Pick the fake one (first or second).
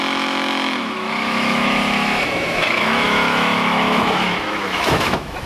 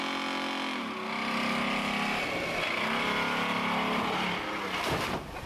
first